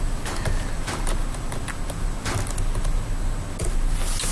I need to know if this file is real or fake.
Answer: real